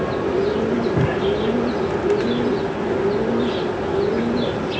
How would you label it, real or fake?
real